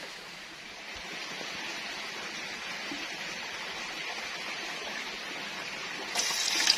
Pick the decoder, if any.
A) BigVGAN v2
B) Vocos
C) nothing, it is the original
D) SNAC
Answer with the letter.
C